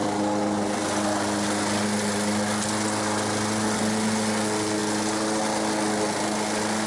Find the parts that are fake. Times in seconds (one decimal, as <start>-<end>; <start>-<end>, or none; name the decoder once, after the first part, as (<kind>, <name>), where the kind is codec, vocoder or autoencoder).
none